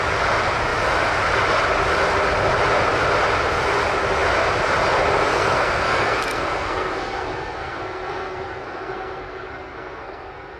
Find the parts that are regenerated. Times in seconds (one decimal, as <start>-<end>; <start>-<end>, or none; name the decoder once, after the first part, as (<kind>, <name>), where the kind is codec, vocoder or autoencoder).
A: 5.3-10.6 (codec, SNAC)